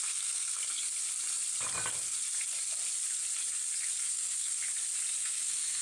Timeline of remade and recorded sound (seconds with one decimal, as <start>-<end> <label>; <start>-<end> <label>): 0.0-0.6 remade; 0.6-4.1 recorded; 4.1-4.5 remade; 4.5-5.2 recorded; 5.2-5.8 remade